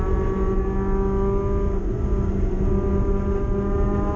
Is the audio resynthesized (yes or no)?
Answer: no